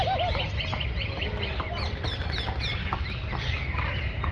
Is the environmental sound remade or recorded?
recorded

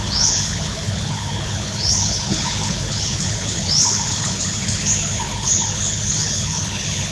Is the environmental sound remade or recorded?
remade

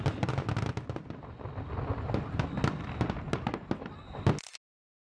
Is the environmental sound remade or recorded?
recorded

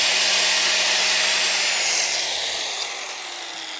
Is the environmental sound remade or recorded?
recorded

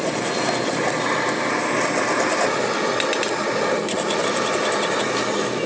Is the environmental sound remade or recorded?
recorded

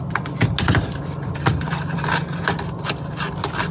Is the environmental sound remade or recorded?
recorded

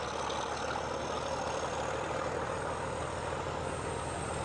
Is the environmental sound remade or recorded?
recorded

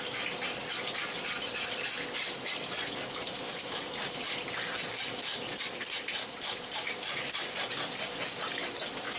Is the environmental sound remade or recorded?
recorded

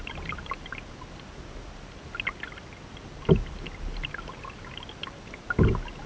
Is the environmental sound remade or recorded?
recorded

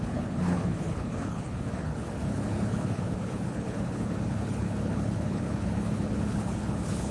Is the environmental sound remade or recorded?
remade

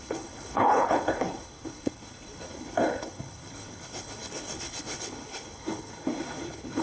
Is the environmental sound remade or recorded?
remade